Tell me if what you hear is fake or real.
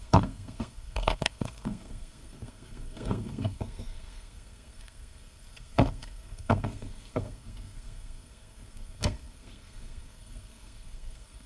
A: fake